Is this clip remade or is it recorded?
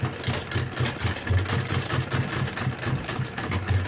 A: recorded